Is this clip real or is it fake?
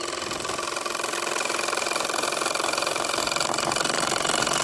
fake